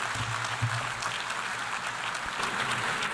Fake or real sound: real